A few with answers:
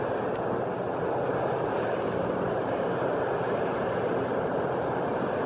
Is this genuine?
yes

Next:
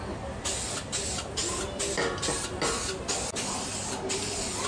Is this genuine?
yes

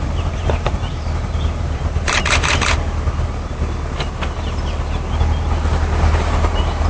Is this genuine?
no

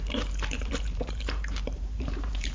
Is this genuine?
no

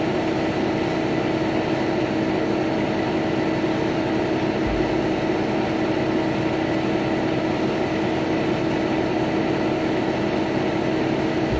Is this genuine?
yes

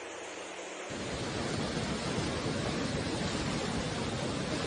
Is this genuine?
yes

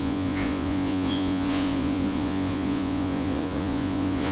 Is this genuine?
no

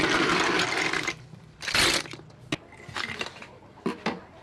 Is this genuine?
yes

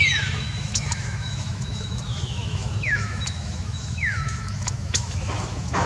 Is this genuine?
no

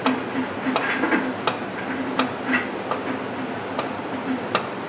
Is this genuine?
yes